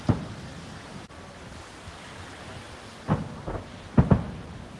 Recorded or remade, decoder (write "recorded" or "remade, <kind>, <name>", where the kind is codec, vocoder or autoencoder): recorded